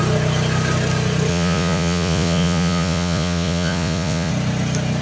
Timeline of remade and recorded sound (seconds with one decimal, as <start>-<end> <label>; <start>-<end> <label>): 0.0-1.3 recorded; 1.3-4.3 remade; 4.3-5.0 recorded